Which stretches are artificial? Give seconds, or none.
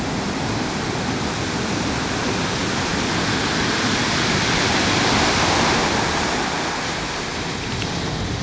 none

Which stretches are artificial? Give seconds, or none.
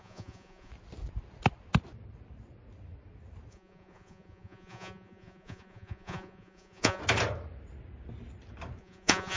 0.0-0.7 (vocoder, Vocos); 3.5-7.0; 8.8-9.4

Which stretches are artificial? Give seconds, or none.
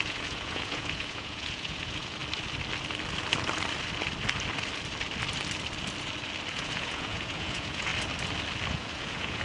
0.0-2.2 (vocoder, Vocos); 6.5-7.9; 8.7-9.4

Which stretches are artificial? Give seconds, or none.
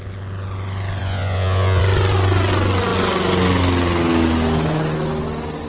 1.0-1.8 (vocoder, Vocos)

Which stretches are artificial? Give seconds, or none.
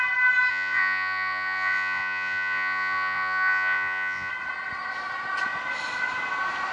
0.5-4.3 (vocoder, Vocos)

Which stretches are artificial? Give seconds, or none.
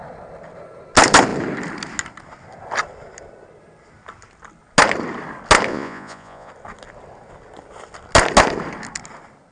5.7-6.5 (vocoder, Vocos)